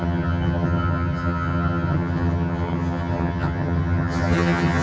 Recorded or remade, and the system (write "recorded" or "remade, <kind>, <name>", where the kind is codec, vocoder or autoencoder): remade, vocoder, HiFi-GAN